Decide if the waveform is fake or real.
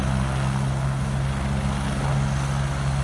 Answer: real